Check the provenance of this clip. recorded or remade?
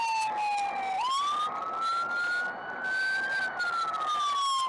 recorded